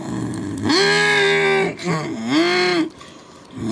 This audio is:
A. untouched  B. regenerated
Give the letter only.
A